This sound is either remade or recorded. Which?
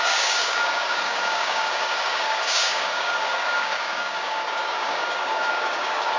remade